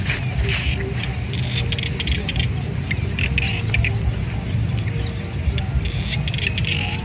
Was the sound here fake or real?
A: fake